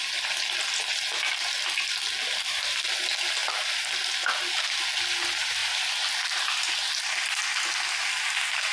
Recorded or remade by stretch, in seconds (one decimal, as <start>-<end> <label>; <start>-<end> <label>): 0.0-8.7 recorded